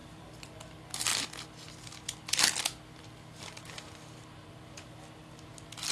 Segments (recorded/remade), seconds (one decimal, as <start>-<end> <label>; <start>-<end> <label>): 0.0-0.6 remade; 0.6-5.9 recorded